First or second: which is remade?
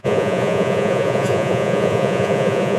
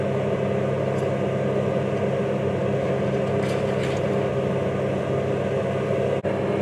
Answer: first